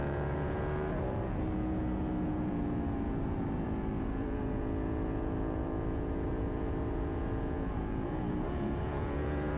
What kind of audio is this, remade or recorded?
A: remade